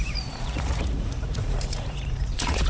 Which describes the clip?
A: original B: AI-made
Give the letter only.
B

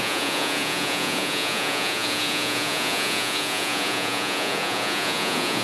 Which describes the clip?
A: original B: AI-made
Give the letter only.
B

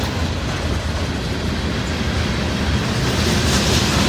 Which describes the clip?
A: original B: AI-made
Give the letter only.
A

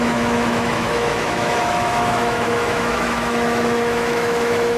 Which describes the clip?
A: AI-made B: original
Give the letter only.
A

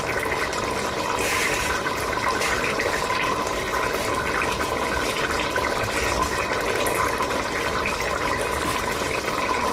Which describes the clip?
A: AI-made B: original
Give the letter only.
B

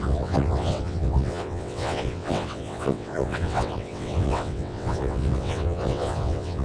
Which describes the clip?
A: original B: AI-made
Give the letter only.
B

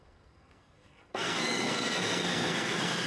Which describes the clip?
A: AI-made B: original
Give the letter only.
A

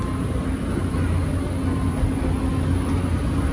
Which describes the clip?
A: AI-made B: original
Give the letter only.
B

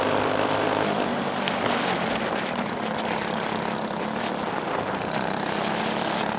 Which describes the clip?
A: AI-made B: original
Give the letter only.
B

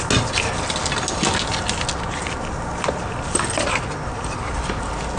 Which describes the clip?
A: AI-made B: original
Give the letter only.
B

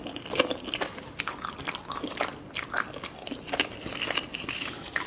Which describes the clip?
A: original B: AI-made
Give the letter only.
A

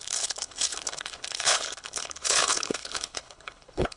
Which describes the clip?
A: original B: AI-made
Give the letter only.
B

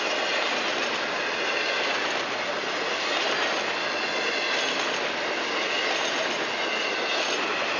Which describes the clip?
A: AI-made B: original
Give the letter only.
B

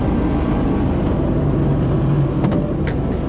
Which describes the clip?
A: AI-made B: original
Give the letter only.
B